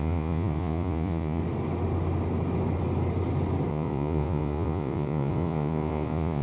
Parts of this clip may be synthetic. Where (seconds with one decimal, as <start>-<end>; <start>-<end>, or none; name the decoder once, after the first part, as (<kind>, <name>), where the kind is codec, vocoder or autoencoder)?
0.0-1.4 (vocoder, Vocos); 3.7-6.4